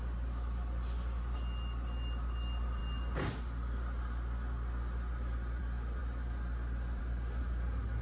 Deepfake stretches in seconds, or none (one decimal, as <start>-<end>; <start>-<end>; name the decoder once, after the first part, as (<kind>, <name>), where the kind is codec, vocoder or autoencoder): none